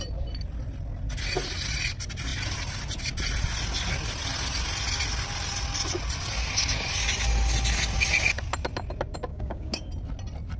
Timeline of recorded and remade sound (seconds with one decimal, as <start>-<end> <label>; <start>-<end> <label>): 0.0-9.3 recorded; 9.3-9.9 remade; 9.9-10.6 recorded